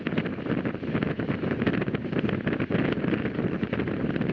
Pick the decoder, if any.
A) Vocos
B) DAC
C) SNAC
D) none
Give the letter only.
D